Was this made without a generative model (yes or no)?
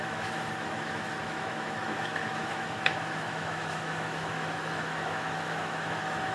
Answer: no